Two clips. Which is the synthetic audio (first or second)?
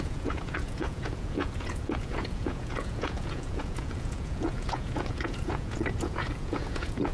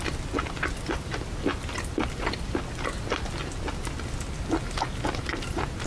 first